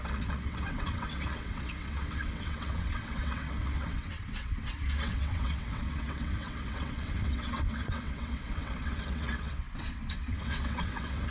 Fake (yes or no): yes